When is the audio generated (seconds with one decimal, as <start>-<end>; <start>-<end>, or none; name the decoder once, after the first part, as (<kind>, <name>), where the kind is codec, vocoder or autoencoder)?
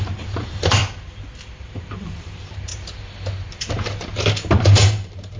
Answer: 0.0-0.8 (vocoder, BigVGAN v2); 1.6-2.7; 4.6-5.4